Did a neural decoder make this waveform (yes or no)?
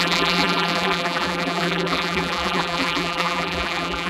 yes